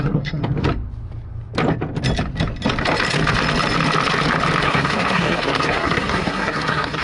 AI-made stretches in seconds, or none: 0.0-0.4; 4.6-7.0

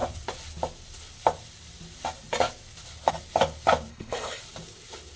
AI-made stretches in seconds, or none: 3.9-4.4